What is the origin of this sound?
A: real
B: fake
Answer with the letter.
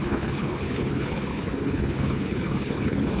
B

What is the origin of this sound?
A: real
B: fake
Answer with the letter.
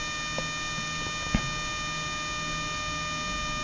A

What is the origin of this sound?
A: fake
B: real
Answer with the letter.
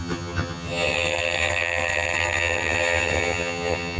A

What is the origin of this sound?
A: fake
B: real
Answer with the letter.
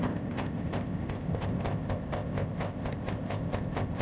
A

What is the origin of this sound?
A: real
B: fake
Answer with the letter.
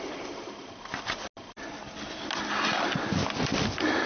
A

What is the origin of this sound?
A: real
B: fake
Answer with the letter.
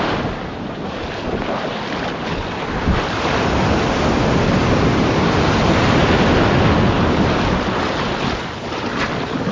A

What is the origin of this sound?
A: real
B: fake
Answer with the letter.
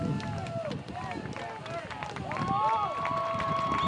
A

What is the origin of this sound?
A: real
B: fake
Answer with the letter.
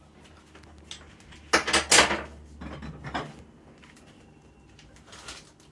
A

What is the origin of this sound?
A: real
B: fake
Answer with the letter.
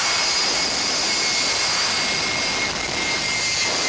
A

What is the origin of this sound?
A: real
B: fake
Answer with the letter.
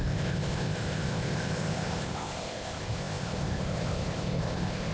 B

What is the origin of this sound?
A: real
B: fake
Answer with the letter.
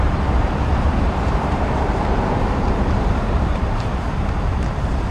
B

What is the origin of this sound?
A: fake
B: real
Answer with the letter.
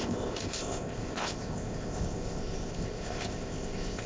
A